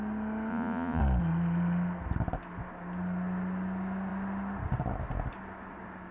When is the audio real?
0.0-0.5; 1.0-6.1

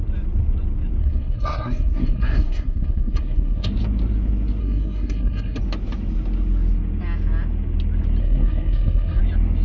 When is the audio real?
0.0-1.0; 3.7-4.6; 5.6-8.2; 9.2-9.6

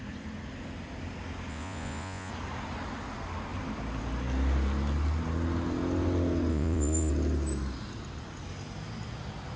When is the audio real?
0.0-1.5; 2.3-6.5; 7.1-9.6